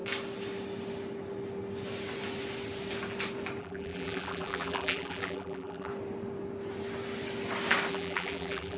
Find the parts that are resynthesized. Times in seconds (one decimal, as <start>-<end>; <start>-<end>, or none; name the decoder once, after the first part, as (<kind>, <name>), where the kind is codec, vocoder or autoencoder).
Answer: 3.6-5.9 (vocoder, BigVGAN v2); 7.9-8.8